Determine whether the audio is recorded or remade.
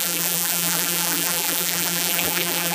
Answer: remade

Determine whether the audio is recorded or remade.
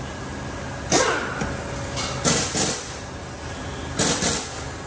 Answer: recorded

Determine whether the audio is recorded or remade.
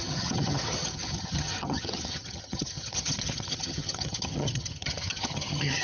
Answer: remade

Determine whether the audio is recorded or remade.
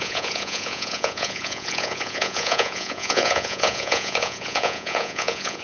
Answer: remade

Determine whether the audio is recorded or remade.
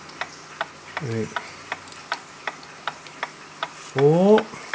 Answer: recorded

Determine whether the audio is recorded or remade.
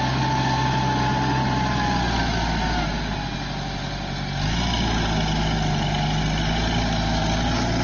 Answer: recorded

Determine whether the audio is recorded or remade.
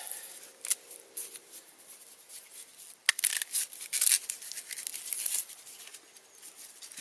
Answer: recorded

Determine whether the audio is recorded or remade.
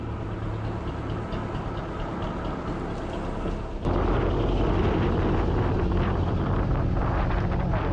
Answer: recorded